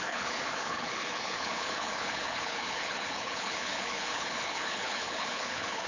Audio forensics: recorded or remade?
remade